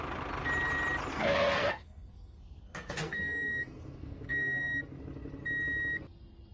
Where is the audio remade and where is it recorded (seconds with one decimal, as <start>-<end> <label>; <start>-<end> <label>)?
0.0-1.1 recorded; 1.1-5.0 remade; 5.0-6.5 recorded